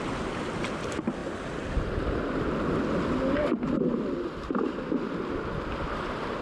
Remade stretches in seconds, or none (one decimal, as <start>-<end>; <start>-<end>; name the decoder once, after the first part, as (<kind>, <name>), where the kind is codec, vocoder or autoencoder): none